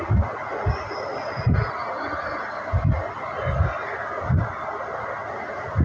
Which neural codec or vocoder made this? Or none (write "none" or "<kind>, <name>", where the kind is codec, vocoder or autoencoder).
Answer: none